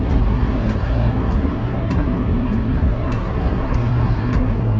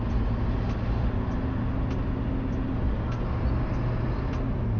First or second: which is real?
second